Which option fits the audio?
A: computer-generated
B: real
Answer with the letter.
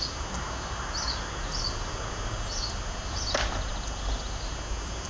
B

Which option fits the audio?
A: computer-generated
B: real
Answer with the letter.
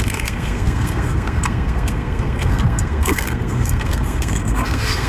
A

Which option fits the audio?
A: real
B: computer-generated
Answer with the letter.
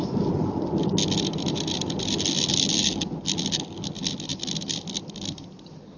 A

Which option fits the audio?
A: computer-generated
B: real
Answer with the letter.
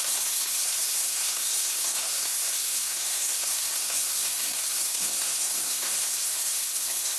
A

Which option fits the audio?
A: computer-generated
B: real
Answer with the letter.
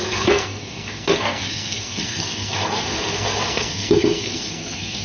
A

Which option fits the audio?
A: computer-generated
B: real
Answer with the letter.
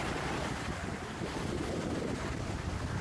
B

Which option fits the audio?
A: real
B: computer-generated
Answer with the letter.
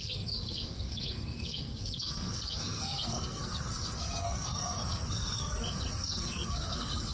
B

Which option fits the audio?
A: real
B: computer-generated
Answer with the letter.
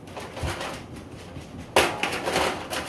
A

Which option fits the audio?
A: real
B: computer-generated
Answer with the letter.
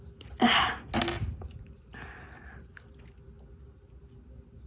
A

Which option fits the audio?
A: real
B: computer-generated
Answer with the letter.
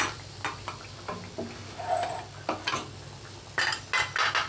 A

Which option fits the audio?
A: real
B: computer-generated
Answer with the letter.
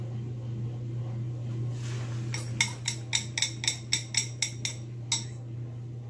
A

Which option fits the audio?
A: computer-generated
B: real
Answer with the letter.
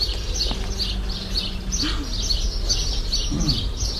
B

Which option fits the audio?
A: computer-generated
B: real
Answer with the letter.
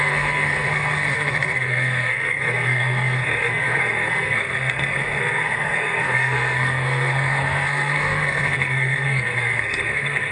A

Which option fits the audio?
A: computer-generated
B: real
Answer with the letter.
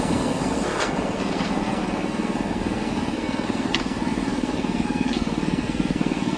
A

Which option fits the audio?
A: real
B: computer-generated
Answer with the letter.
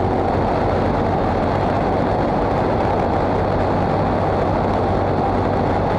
A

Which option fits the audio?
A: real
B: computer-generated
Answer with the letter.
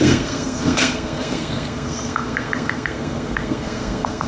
B